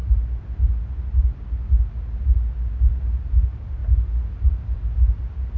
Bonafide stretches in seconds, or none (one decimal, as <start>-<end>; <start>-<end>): 0.0-2.9; 3.8-5.6